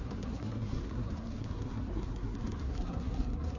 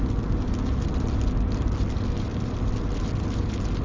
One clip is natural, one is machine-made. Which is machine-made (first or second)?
first